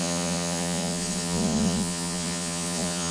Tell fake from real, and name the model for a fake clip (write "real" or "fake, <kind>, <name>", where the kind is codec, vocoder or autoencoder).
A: fake, vocoder, Vocos